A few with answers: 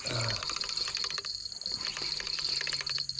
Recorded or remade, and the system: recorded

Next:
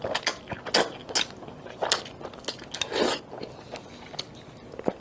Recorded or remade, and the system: recorded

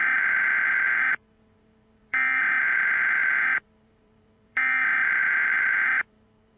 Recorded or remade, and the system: remade, vocoder, BigVGAN v2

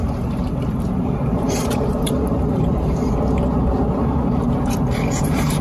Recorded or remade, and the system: remade, vocoder, BigVGAN v2